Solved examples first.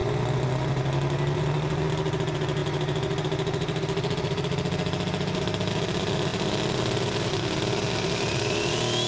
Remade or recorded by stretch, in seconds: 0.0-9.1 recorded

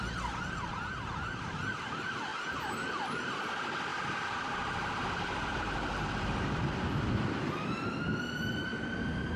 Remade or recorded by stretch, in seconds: 0.0-9.4 recorded

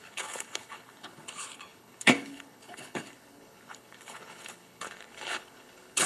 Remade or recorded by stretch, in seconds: 0.0-6.1 remade

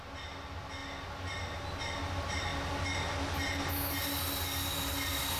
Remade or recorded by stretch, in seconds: 0.0-5.4 recorded

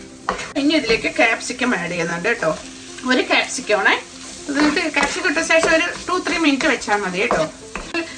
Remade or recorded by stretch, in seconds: 0.0-2.1 remade; 2.1-4.9 recorded; 4.9-8.2 remade

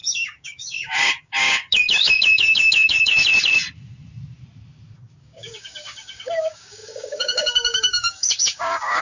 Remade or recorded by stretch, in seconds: 0.0-3.1 remade; 3.1-5.2 recorded; 5.2-9.0 remade

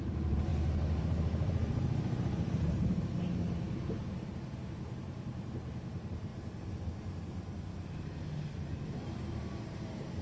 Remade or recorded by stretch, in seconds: 0.0-0.5 remade; 0.5-1.0 recorded; 1.0-6.3 remade; 6.3-8.9 recorded; 8.9-10.2 remade